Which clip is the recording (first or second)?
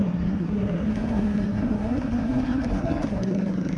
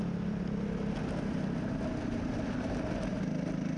second